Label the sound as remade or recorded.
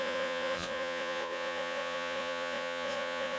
remade